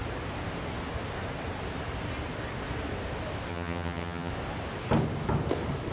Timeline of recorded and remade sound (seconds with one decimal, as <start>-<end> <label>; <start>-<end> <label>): 0.0-3.5 recorded; 3.5-4.3 remade; 4.3-5.9 recorded